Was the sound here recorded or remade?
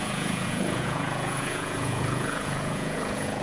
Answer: remade